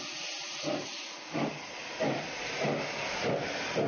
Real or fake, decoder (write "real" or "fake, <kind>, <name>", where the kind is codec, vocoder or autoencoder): real